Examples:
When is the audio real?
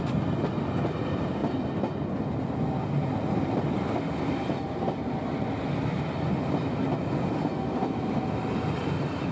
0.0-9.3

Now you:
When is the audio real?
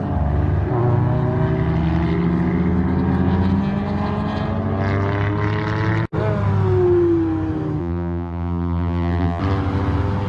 0.0-7.8; 9.4-10.3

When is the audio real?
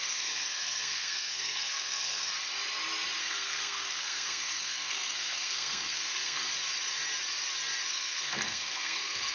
2.3-3.2; 6.4-7.9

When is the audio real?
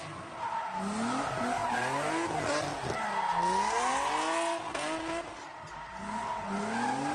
0.0-7.1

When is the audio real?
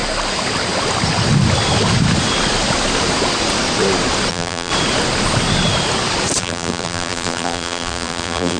0.0-4.3; 4.7-6.4